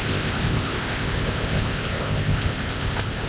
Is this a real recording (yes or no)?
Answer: no